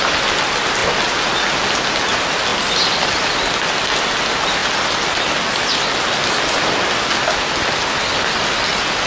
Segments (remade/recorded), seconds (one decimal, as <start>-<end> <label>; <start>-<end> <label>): 0.0-9.1 recorded